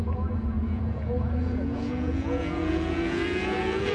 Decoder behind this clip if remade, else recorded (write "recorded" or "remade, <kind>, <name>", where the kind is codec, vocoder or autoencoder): remade, vocoder, Vocos